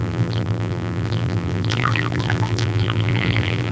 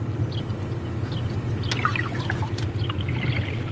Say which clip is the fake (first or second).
first